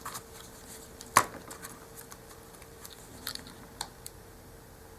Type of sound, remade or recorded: remade